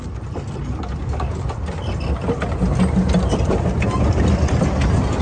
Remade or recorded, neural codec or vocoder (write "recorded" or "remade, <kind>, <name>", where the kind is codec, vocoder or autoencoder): recorded